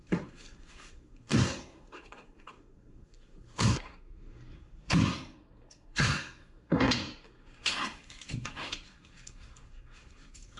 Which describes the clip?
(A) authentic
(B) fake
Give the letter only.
B